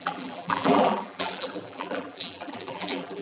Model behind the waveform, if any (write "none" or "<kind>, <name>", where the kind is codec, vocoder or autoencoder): vocoder, BigVGAN v2